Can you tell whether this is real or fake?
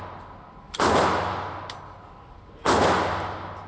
real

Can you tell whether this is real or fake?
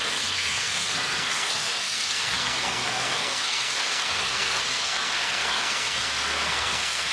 fake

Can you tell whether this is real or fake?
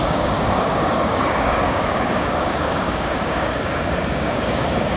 fake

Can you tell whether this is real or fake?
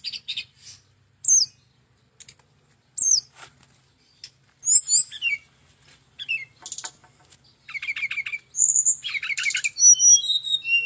real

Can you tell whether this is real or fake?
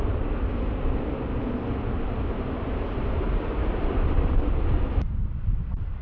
real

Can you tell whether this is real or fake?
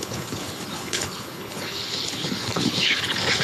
fake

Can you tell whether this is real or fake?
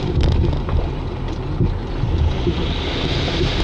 real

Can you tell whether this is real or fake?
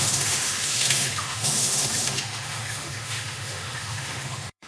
fake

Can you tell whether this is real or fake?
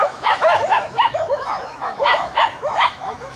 fake